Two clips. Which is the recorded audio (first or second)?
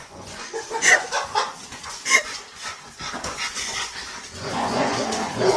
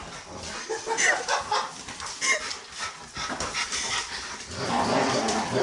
second